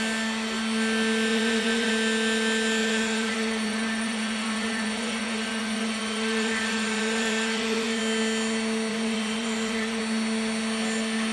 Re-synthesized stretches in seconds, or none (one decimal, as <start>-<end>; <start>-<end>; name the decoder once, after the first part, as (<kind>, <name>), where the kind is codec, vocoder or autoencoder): 1.3-1.9 (vocoder, Vocos); 2.8-8.0; 8.9-10.0